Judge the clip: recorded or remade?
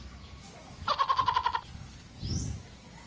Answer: recorded